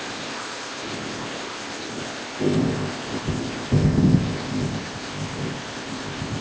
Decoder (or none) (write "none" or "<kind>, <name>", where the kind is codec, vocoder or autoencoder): codec, ZipCodec